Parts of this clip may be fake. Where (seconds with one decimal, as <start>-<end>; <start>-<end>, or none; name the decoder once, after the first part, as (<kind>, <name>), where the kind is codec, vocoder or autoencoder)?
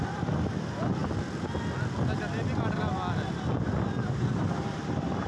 0.0-1.0 (vocoder, BigVGAN v2); 4.2-5.3